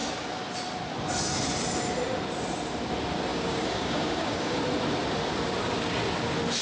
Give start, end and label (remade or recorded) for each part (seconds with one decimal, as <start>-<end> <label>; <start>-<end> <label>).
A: 0.0-3.3 recorded; 3.3-4.6 remade; 4.6-6.6 recorded